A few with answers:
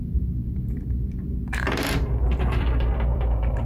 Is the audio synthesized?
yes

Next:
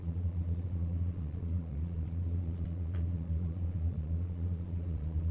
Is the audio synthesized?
yes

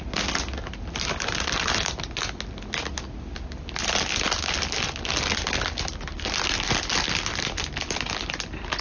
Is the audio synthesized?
no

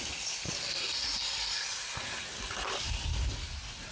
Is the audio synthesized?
no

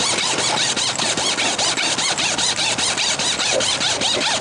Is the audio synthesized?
no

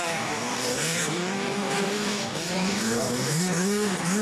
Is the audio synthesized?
yes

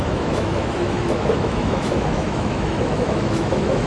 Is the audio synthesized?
yes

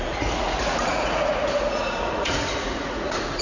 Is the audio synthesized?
yes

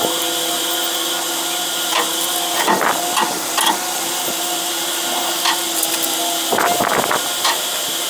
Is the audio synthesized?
no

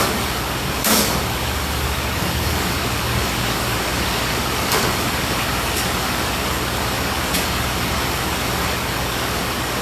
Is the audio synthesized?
yes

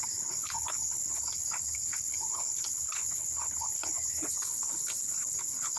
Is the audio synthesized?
yes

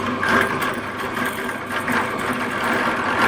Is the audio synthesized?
no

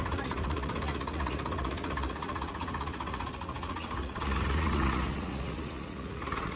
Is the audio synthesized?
yes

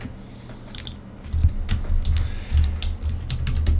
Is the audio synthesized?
no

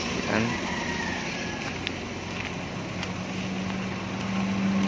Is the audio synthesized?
no